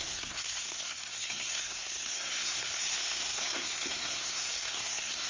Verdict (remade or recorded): remade